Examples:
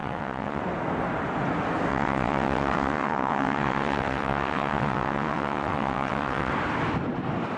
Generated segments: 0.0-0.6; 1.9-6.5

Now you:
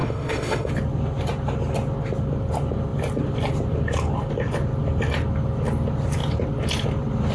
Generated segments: 0.0-0.7